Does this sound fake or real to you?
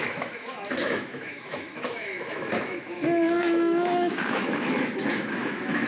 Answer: fake